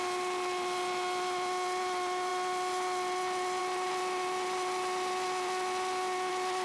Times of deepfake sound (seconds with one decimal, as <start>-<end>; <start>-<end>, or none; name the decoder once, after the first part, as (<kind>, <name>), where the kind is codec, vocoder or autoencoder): none